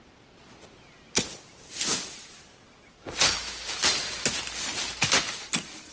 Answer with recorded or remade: recorded